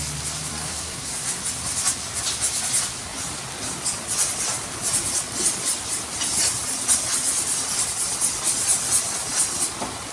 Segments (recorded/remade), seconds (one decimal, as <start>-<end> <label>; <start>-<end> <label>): 0.0-0.5 recorded; 0.5-1.4 remade; 1.4-10.1 recorded